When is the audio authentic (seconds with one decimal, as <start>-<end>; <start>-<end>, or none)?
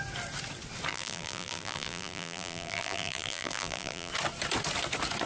0.0-0.9; 4.1-5.3